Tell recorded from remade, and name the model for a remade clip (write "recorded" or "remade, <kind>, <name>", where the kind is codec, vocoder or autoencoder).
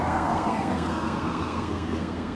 remade, codec, SNAC